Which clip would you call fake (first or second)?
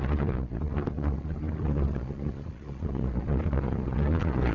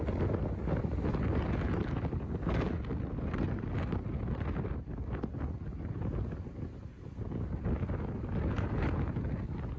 first